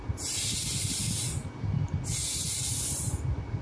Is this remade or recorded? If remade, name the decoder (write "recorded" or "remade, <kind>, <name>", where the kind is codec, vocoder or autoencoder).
recorded